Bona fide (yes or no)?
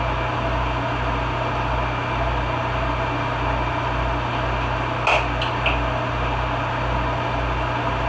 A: yes